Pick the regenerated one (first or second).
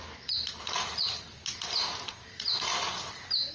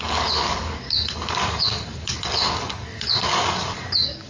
second